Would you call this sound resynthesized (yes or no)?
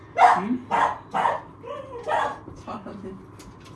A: no